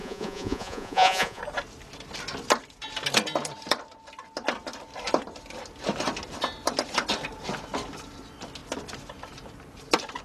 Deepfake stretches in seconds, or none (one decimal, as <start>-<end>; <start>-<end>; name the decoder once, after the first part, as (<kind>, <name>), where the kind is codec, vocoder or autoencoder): 0.0-1.4 (vocoder, Vocos)